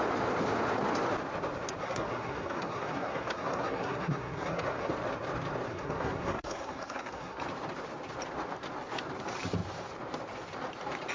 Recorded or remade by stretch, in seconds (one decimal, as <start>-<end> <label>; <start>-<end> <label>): 0.0-1.8 recorded; 1.8-4.9 remade; 4.9-5.7 recorded; 5.7-7.4 remade; 7.4-11.1 recorded

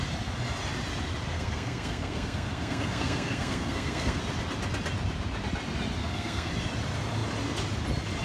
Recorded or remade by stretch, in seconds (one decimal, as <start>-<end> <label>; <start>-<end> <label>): 0.0-1.3 recorded; 1.3-4.2 remade; 4.2-6.0 recorded; 6.0-6.5 remade; 6.5-8.2 recorded